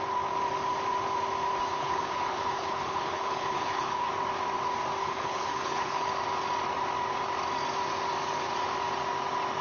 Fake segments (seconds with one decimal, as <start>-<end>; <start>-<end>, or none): 1.7-4.1; 5.0-6.1